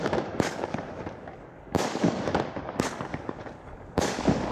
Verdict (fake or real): fake